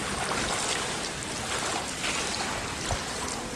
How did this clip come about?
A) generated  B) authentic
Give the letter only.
B